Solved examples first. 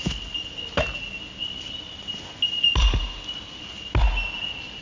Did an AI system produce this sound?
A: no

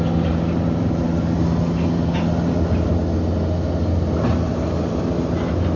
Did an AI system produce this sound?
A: no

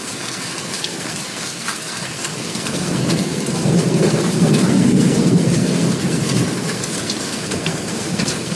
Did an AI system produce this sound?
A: yes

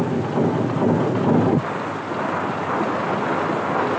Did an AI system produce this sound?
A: no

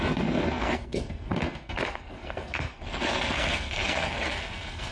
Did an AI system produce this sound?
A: yes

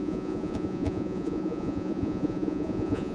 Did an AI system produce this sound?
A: yes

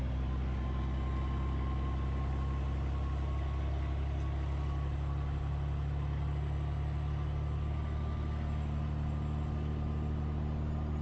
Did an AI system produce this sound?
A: no